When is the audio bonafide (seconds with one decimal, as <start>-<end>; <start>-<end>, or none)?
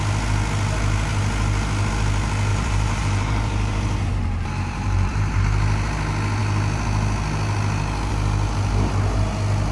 0.0-2.5; 5.4-9.7